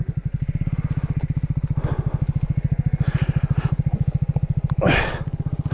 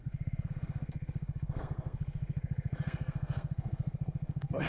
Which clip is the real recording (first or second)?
first